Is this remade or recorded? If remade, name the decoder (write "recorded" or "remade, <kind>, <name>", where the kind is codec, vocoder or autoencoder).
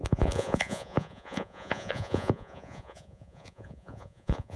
remade, vocoder, Vocos